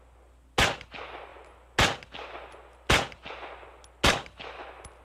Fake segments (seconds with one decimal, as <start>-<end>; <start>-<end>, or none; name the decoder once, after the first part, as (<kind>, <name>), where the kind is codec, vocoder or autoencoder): none